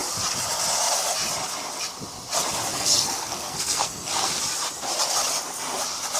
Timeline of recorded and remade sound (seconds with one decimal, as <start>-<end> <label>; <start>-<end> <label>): 0.0-2.7 recorded; 2.7-4.4 remade; 4.4-6.2 recorded